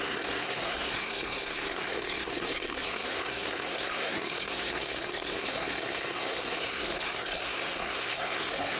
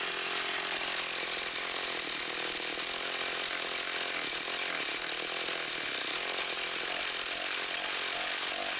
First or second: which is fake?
first